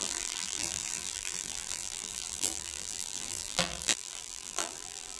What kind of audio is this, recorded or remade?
remade